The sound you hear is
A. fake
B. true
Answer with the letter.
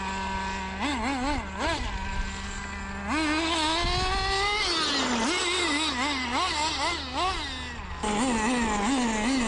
B